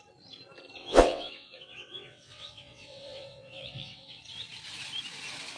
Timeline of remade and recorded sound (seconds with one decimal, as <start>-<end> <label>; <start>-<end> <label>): 0.0-0.8 recorded; 0.8-4.2 remade; 4.2-5.6 recorded